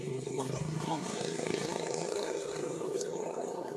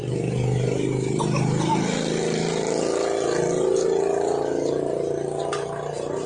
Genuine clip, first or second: second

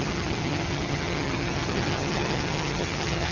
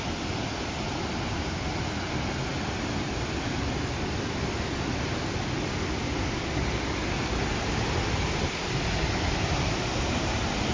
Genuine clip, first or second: second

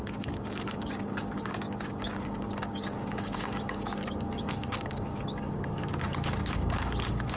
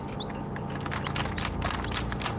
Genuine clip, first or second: second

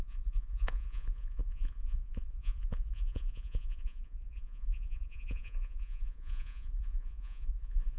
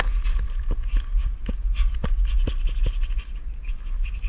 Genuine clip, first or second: second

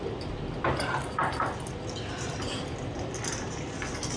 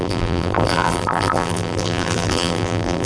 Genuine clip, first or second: first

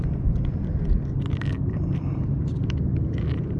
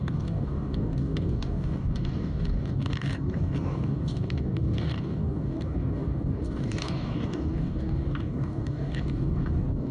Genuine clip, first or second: first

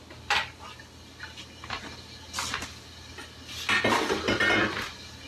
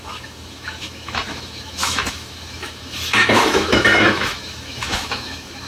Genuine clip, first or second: first